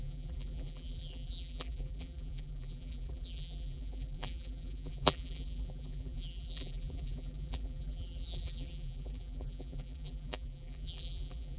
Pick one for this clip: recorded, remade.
remade